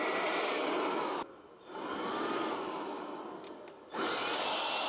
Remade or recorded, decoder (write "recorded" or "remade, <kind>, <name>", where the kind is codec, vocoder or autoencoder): recorded